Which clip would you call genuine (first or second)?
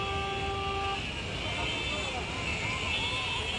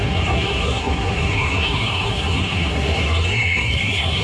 first